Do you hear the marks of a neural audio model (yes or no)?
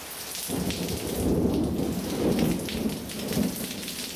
no